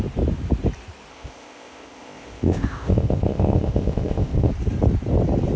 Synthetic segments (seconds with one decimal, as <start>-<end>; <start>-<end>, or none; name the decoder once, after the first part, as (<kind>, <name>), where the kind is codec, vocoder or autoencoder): 1.1-4.5 (codec, ZipCodec)